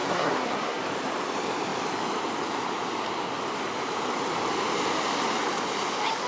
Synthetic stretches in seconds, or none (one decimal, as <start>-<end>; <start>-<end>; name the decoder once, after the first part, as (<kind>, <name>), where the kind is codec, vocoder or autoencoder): 0.0-0.8 (codec, SNAC)